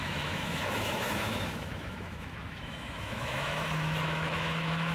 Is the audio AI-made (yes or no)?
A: yes